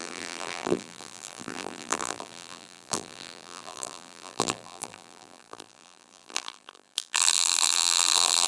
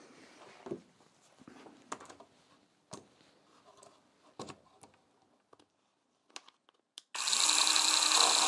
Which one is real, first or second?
second